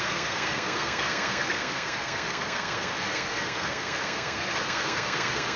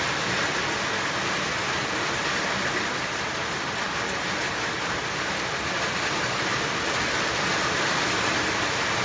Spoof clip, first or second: first